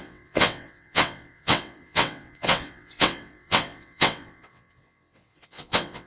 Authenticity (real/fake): fake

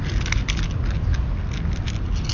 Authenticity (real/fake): real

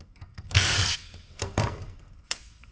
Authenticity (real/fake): fake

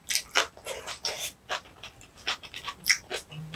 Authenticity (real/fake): real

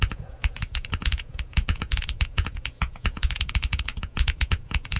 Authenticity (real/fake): fake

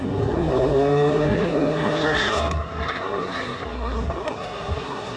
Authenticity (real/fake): fake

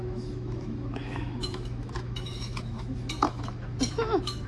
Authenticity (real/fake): fake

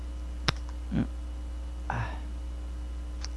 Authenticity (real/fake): real